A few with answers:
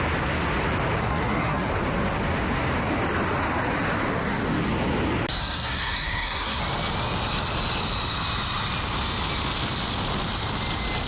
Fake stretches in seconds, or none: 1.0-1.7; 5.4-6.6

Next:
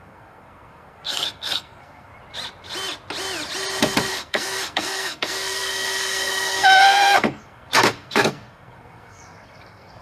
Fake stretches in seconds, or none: 0.0-2.1; 4.1-10.0

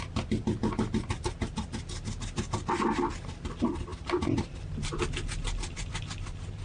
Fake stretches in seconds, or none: none

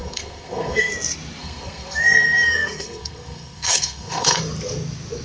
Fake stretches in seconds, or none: 0.0-0.9; 1.4-4.4

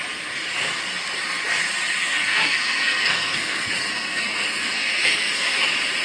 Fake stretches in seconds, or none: 2.0-5.6

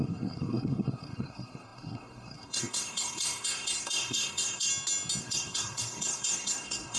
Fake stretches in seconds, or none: 0.0-4.7; 5.2-7.0